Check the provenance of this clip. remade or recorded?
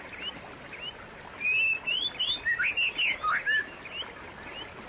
recorded